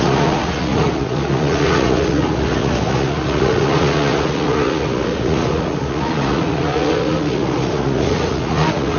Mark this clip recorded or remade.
remade